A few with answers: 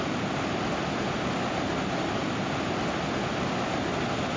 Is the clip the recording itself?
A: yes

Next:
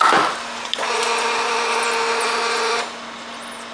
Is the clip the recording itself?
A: yes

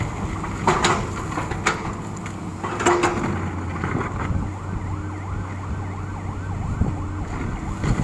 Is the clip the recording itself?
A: yes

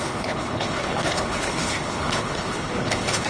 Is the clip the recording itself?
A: no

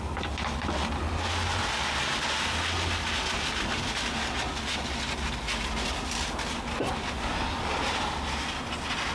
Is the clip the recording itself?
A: yes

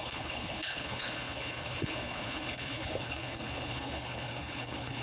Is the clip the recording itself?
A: no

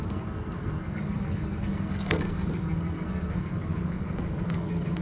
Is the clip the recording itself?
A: no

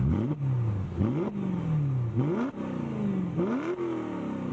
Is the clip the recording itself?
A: yes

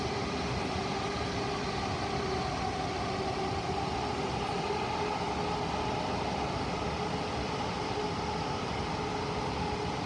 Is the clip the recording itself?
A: yes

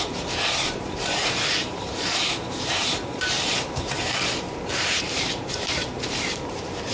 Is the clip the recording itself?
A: no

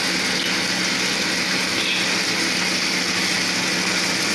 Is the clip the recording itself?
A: yes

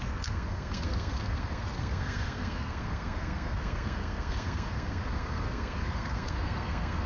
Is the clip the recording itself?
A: no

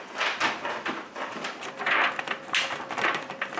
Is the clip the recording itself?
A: yes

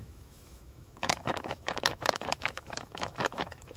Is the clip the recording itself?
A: no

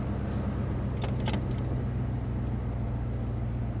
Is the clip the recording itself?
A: yes